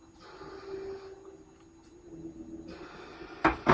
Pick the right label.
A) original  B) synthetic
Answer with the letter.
A